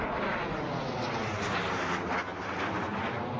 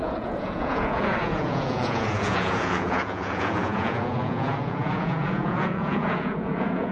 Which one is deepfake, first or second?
second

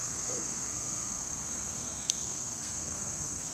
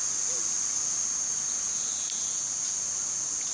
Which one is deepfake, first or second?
first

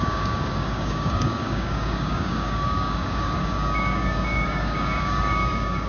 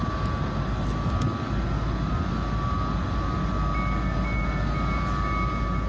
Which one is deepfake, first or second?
first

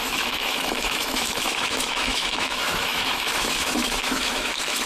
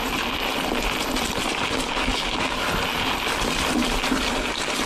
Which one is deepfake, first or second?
first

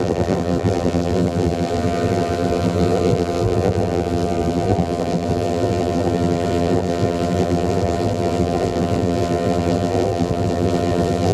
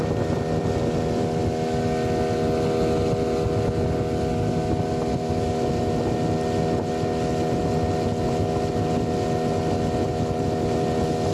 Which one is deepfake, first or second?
first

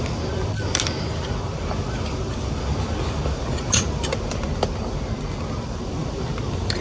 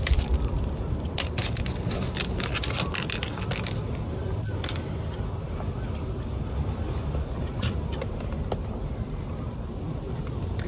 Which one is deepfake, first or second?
second